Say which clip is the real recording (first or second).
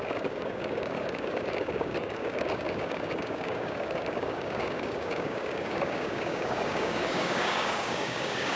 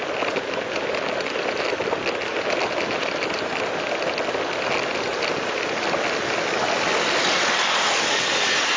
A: second